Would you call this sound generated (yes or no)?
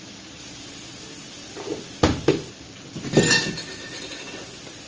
no